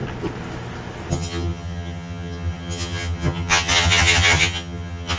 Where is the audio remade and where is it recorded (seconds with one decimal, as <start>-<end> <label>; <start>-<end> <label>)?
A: 0.0-1.1 recorded; 1.1-5.2 remade